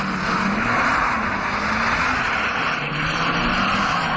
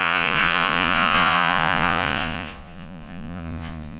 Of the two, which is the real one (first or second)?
first